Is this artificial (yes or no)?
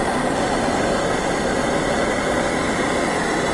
no